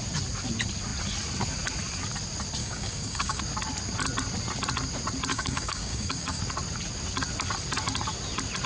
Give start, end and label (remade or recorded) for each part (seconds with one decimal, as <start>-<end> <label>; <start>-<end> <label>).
0.0-2.6 recorded; 2.6-3.4 remade; 3.4-5.3 recorded; 5.3-6.4 remade; 6.4-8.7 recorded